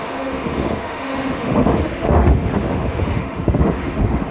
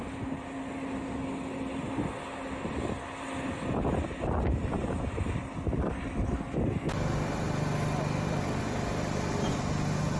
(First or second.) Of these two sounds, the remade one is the first